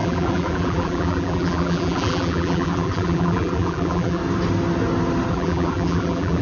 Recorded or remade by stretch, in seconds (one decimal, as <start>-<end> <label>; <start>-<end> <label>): 0.0-4.2 remade; 4.2-5.3 recorded; 5.3-6.4 remade